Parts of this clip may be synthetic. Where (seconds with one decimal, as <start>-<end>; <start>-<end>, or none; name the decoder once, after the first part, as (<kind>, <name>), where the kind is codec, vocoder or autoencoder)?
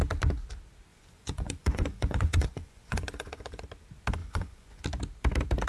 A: 0.9-3.6 (vocoder, Vocos); 4.2-4.8